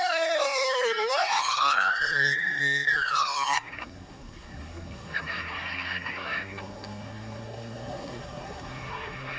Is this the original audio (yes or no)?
no